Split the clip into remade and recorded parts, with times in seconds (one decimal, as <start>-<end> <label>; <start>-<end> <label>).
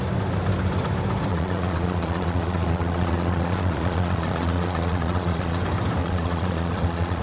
0.0-1.3 recorded; 1.3-5.6 remade; 5.6-6.0 recorded; 6.0-7.2 remade